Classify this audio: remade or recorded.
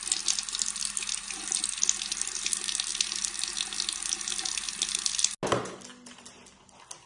recorded